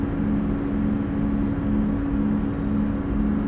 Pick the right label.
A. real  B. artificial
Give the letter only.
A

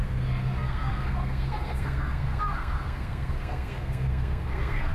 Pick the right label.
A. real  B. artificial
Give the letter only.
B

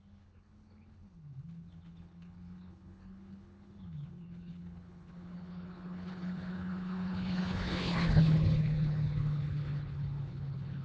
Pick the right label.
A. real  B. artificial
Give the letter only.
B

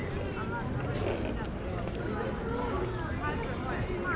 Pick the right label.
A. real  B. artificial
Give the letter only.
A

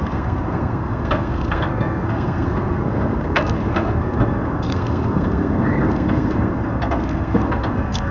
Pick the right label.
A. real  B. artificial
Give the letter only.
B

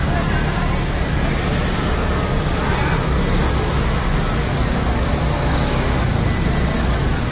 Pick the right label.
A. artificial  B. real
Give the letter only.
B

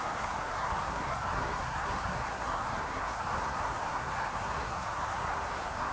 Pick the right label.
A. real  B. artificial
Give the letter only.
B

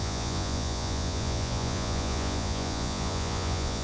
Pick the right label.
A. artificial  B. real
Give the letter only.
A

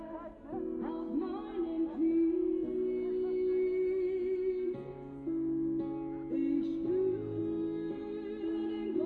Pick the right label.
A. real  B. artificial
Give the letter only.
A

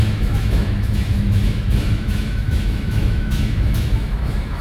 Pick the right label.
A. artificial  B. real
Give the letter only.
A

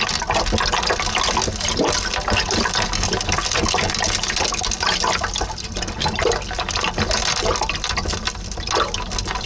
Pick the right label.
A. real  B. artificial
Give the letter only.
A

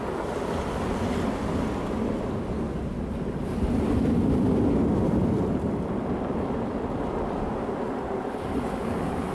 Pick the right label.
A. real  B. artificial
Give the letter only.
A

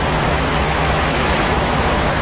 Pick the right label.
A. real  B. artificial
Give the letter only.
B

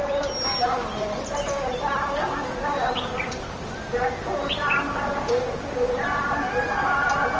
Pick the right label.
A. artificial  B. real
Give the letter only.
B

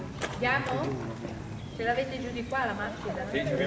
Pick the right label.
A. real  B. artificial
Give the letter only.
A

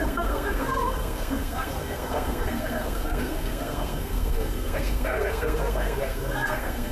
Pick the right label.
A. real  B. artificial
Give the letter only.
B